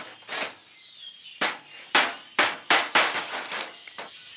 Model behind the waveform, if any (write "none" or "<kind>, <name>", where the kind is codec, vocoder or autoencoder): none